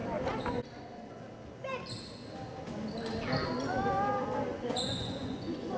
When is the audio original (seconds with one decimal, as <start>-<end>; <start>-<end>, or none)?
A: 0.0-4.5

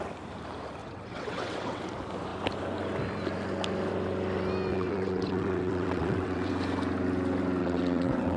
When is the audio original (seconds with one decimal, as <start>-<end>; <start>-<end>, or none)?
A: 0.0-0.8; 1.8-4.7; 6.5-7.6

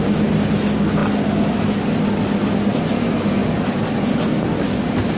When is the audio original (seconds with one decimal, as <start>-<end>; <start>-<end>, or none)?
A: 0.0-5.2

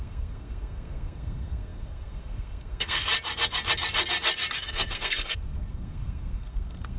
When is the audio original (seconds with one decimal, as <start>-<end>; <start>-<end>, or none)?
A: 3.1-4.6

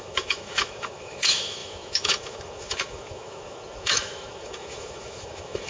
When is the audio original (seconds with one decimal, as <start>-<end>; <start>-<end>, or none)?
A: none

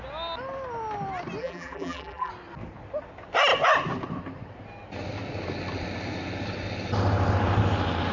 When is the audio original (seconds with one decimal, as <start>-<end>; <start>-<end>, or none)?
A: 0.0-1.4; 2.3-8.1